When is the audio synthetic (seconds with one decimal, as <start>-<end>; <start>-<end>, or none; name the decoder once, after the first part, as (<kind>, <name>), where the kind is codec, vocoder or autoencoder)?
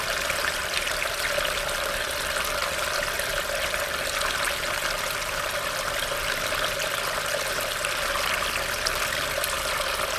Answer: none